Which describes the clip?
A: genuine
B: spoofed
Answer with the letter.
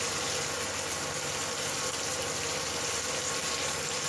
A